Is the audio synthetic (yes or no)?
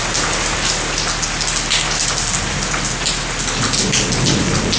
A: no